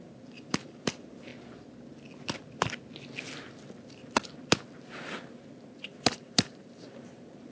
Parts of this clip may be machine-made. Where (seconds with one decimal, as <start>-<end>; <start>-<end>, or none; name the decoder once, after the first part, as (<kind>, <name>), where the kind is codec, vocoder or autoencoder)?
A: 0.0-1.3 (vocoder, BigVGAN v2); 5.8-7.5